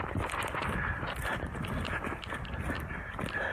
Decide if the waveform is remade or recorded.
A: recorded